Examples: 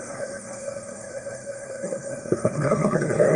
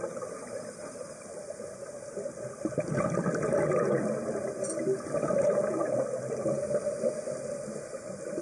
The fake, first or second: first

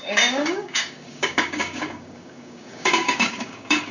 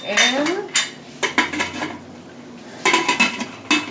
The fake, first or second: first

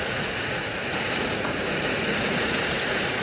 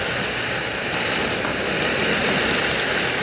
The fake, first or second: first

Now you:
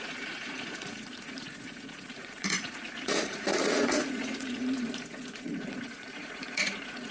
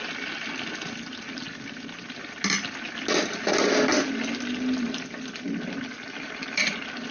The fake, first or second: first